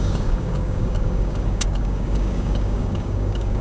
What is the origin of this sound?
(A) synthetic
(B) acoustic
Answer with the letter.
A